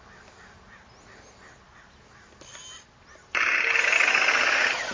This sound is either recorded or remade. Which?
recorded